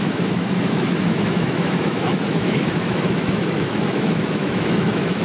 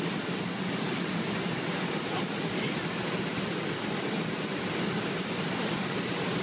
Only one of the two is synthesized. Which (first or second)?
first